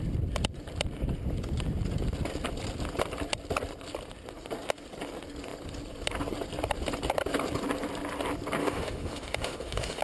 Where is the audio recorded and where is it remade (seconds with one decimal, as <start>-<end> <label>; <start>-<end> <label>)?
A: 0.0-8.6 recorded; 8.6-10.0 remade